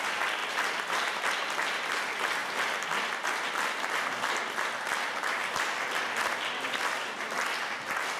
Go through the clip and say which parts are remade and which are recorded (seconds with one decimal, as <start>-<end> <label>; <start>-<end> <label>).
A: 0.0-0.4 recorded; 0.4-1.9 remade; 1.9-8.2 recorded